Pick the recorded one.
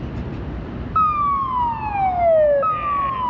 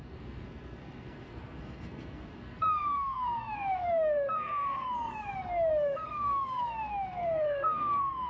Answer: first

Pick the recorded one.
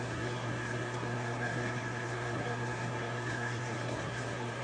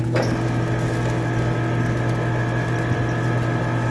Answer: second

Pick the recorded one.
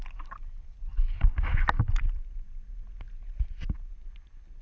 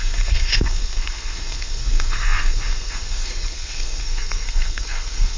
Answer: first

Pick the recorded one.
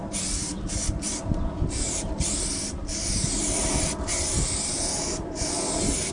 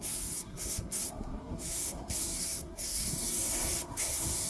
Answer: first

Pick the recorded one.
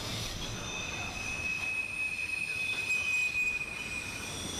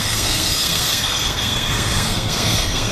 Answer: first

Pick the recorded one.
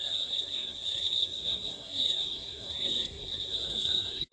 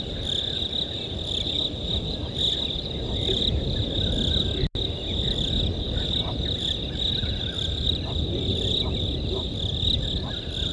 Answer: second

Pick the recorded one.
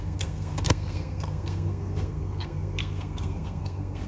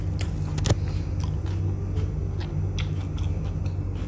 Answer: second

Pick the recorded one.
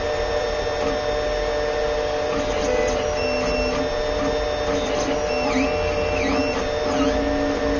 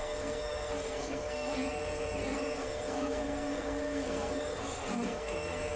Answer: first